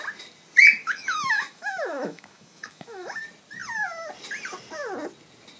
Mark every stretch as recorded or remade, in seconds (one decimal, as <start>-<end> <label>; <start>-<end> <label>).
0.0-0.8 recorded; 0.8-3.2 remade; 3.2-5.6 recorded